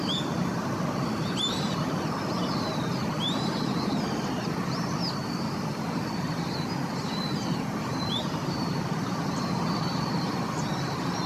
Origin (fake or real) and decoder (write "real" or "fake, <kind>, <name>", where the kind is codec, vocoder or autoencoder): real